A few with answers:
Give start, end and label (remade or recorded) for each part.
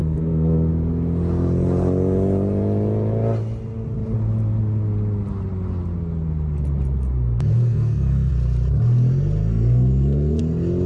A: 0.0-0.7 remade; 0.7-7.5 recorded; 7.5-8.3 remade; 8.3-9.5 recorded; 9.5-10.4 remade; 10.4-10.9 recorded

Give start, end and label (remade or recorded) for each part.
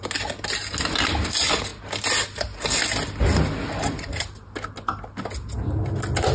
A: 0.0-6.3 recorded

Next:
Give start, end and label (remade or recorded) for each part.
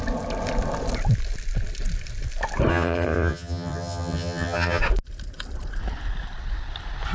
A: 0.0-2.7 recorded; 2.7-4.8 remade; 4.8-7.1 recorded